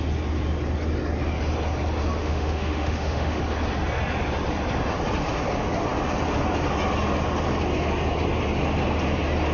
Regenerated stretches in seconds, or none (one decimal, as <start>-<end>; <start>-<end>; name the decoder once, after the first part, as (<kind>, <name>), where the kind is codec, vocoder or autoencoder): 2.2-3.4 (autoencoder, DAC-VAE)